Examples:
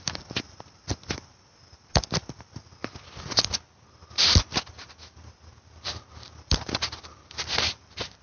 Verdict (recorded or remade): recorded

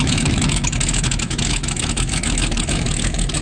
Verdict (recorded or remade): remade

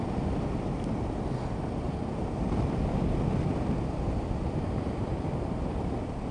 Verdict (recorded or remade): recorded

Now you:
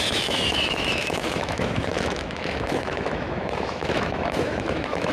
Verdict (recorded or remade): remade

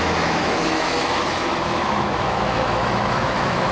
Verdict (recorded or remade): remade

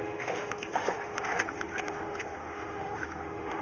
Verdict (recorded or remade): remade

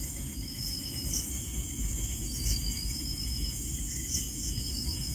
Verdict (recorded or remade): remade